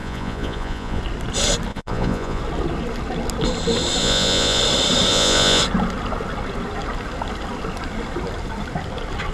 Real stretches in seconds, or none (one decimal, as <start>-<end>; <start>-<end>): 1.0-1.7; 2.4-4.0; 4.6-5.1; 5.6-9.3